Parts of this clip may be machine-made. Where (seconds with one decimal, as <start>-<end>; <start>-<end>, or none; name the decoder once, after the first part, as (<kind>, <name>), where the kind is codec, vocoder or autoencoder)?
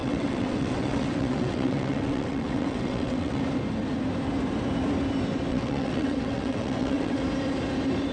0.0-3.4 (vocoder, WaveNeXt); 5.5-7.2